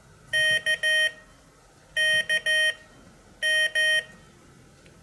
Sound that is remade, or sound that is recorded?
recorded